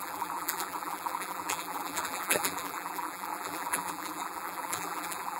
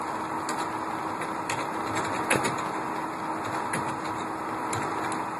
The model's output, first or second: first